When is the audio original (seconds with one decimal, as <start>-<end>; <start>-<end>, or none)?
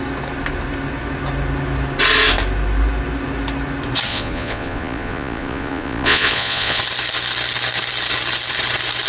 0.0-4.1; 6.8-9.1